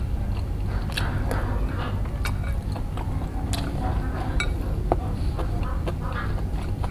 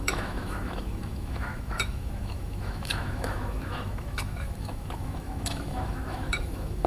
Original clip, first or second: first